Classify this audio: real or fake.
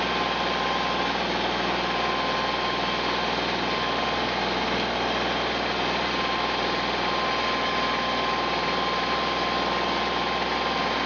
real